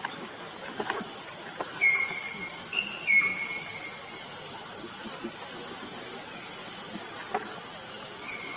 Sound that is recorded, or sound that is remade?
recorded